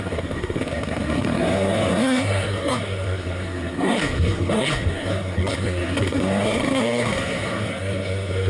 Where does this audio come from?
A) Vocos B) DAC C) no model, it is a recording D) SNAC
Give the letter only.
D